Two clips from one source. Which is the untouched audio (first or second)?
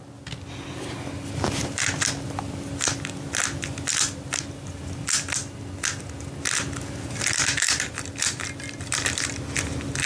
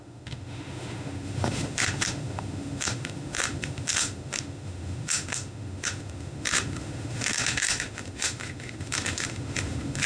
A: first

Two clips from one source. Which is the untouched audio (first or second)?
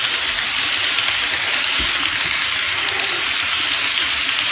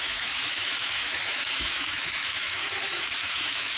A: first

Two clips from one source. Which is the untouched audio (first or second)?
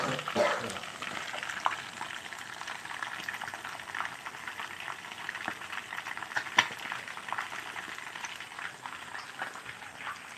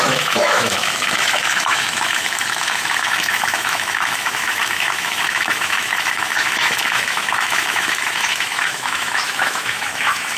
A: first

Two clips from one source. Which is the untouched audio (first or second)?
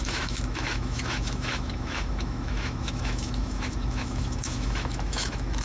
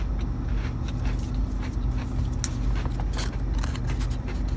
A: second